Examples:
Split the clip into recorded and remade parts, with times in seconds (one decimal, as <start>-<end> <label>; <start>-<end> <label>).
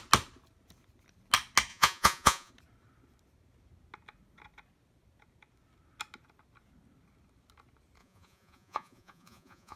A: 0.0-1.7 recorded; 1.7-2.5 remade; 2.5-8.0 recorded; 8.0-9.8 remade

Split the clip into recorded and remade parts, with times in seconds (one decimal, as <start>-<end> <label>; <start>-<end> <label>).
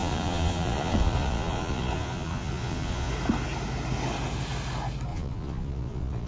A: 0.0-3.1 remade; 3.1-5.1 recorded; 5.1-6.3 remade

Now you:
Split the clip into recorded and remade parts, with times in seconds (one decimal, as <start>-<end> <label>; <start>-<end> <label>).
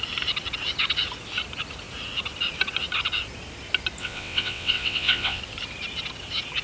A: 0.0-4.0 recorded; 4.0-5.4 remade; 5.4-6.6 recorded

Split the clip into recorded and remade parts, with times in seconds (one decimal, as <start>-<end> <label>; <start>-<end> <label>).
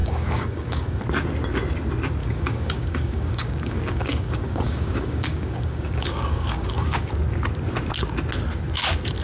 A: 0.0-1.0 remade; 1.0-2.2 recorded; 2.2-7.1 remade; 7.1-9.2 recorded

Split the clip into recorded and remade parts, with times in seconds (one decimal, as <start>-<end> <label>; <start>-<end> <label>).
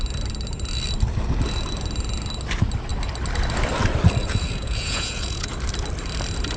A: 0.0-4.2 recorded; 4.2-5.5 remade; 5.5-6.6 recorded